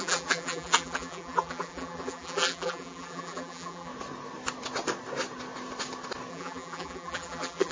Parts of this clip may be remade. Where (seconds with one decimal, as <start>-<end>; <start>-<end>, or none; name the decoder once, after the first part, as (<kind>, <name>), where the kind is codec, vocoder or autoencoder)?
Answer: 0.0-3.9 (vocoder, BigVGAN v2); 6.3-7.7